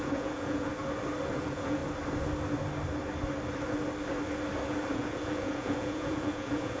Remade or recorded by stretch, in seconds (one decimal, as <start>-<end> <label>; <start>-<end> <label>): 0.0-0.7 remade; 0.7-1.3 recorded; 1.3-1.8 remade; 1.8-4.9 recorded; 4.9-6.8 remade